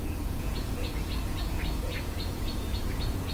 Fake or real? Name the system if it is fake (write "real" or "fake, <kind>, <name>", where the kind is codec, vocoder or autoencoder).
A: fake, vocoder, Vocos